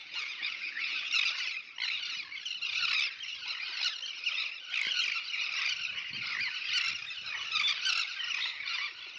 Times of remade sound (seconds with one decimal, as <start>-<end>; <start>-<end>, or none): 0.0-1.1